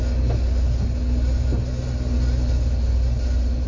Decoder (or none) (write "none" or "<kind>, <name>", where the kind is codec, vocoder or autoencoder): none